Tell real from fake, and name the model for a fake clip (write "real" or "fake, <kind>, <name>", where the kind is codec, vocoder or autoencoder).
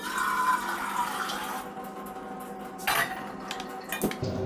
real